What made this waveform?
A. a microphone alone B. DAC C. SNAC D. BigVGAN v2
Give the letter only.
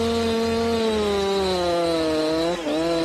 A